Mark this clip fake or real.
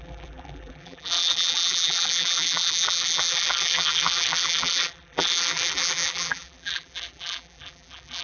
fake